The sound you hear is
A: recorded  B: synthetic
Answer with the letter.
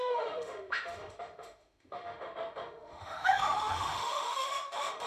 B